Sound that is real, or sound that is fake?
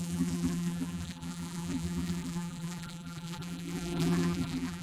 fake